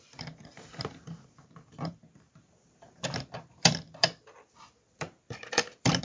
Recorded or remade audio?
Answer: remade